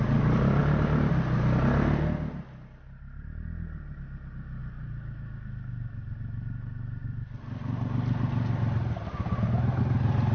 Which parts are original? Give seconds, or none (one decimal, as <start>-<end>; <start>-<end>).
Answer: 0.0-10.3